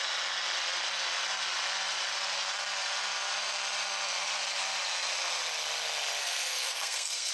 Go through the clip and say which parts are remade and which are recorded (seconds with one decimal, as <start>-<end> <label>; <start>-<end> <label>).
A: 0.0-6.2 recorded; 6.2-7.3 remade